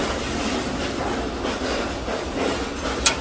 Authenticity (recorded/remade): recorded